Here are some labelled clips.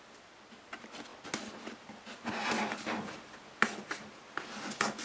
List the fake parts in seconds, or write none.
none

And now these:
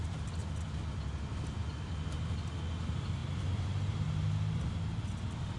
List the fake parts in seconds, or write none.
0.0-0.5 (vocoder, BigVGAN v2); 3.2-4.1